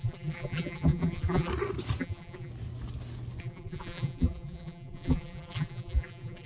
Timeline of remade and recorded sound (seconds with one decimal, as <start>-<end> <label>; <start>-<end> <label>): 0.0-1.5 remade; 1.5-2.0 recorded; 2.0-2.5 remade; 2.5-3.4 recorded; 3.4-6.5 remade